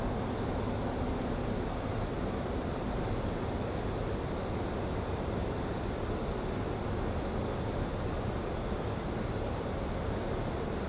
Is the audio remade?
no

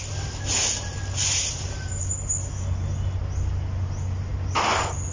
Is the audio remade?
no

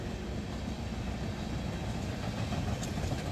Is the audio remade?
no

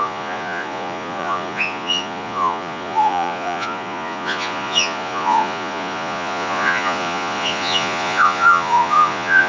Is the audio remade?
yes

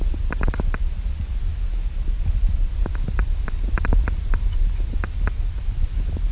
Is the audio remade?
no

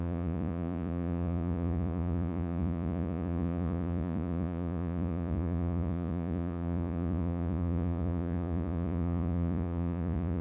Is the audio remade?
yes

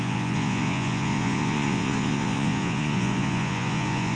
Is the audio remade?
yes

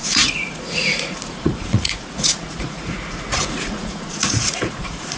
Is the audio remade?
yes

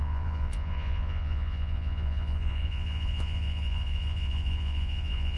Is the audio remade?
yes